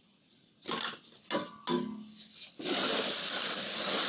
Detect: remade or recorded recorded